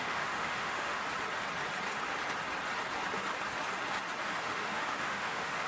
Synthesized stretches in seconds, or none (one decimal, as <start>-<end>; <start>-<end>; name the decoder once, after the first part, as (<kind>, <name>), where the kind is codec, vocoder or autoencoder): 0.0-1.0 (autoencoder, DAC-VAE); 4.4-5.7